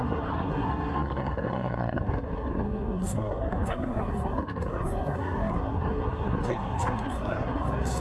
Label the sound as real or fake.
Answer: fake